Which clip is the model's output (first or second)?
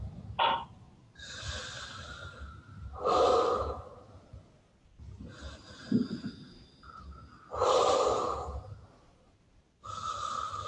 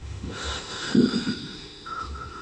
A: second